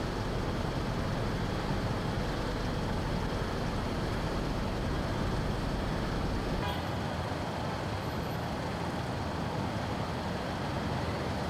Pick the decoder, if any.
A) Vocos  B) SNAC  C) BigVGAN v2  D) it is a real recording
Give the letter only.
D